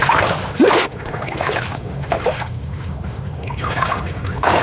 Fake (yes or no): yes